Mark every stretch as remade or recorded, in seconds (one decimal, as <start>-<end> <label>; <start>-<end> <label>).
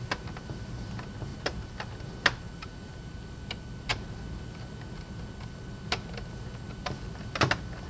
0.0-7.9 recorded